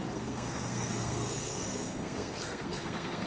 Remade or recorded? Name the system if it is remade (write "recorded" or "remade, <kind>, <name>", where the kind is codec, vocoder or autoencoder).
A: remade, codec, SNAC